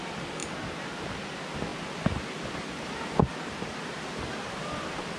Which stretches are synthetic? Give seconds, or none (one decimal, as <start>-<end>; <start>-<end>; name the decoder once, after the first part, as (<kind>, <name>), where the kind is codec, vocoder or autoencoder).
none